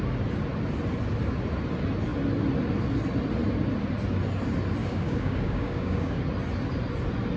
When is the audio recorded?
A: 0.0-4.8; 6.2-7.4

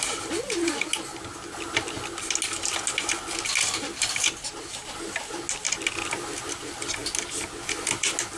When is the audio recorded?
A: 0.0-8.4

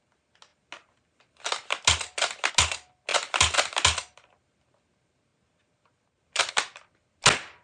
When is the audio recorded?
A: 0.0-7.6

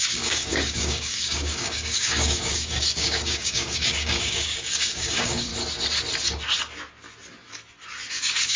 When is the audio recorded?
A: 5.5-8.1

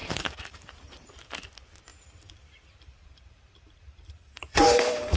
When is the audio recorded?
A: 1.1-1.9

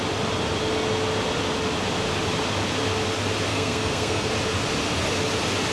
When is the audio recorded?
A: 0.0-3.5; 4.3-5.7